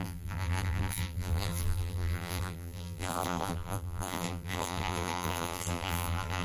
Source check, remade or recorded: remade